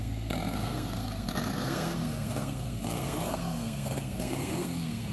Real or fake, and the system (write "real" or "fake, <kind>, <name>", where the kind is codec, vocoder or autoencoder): fake, codec, SNAC